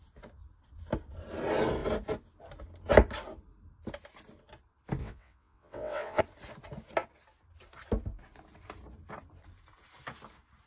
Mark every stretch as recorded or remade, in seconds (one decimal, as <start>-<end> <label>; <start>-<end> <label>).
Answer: 0.0-5.0 recorded; 5.0-6.2 remade; 6.2-10.7 recorded